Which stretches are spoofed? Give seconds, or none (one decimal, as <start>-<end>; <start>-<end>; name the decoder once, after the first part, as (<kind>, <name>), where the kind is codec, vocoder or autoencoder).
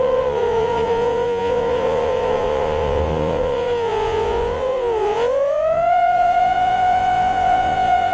0.0-8.1 (vocoder, Vocos)